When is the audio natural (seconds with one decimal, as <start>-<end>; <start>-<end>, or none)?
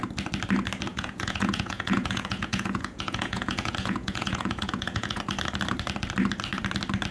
0.0-0.9; 5.2-7.1